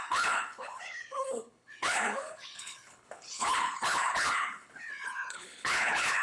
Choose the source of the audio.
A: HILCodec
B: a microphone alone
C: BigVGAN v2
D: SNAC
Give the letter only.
A